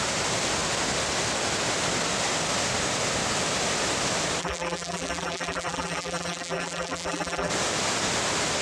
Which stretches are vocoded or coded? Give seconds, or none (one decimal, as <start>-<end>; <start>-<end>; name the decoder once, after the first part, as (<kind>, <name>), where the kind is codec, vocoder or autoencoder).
4.4-7.5 (vocoder, BigVGAN v2)